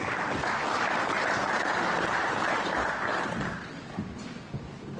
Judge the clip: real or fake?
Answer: real